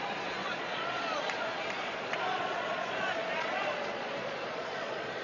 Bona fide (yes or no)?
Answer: no